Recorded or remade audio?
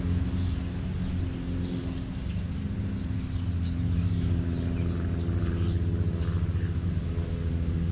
recorded